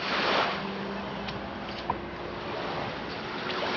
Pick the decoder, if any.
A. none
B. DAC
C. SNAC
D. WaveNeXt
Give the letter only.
A